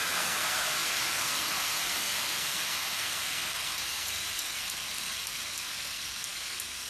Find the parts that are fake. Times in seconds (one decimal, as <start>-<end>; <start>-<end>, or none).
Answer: 0.0-6.9